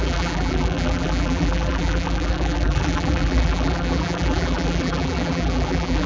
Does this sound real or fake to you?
fake